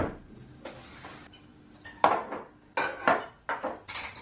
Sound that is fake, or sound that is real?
real